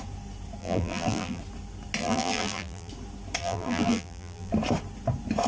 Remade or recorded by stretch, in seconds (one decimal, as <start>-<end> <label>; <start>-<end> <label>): 0.0-0.6 recorded; 0.6-1.4 remade; 1.4-2.0 recorded; 2.0-2.9 remade; 2.9-3.4 recorded; 3.4-4.5 remade; 4.5-5.5 recorded